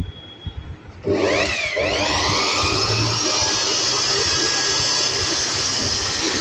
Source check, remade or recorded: recorded